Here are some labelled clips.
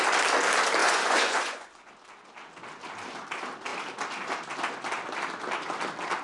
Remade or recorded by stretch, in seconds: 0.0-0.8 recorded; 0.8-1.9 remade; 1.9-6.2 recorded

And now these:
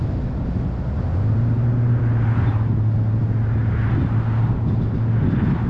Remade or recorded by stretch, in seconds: 0.0-1.1 recorded; 1.1-2.0 remade; 2.0-5.7 recorded